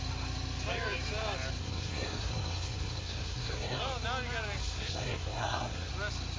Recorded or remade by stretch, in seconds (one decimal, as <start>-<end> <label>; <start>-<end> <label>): 0.0-1.6 recorded; 1.6-3.8 remade; 3.8-4.6 recorded; 4.6-5.9 remade; 5.9-6.4 recorded